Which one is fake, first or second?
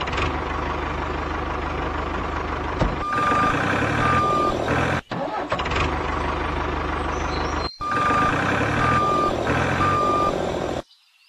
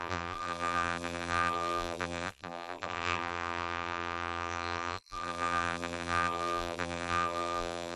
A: second